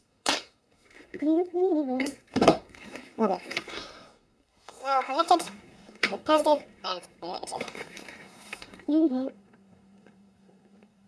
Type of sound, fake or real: fake